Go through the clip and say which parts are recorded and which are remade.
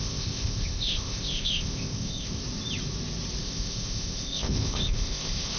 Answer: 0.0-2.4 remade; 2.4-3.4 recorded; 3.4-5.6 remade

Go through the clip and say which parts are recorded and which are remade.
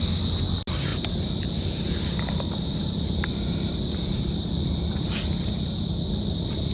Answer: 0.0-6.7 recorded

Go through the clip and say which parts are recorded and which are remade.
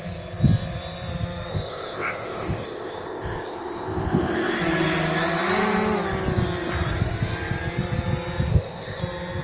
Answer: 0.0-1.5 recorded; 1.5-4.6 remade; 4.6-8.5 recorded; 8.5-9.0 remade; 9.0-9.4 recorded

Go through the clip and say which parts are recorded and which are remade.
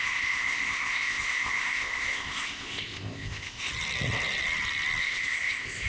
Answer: 0.0-3.7 remade; 3.7-5.0 recorded; 5.0-5.9 remade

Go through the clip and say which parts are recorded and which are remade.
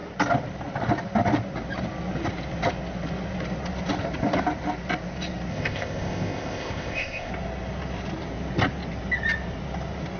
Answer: 0.0-5.5 recorded; 5.5-7.3 remade; 7.3-10.2 recorded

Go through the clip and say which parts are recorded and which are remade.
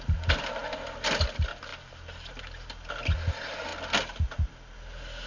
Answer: 0.0-5.3 recorded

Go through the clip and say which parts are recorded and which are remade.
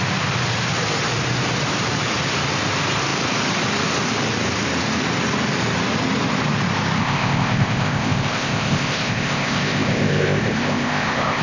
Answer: 0.0-7.0 recorded; 7.0-11.4 remade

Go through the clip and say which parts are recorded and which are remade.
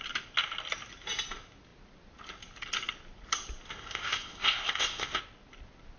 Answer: 0.0-3.7 recorded; 3.7-5.2 remade; 5.2-6.0 recorded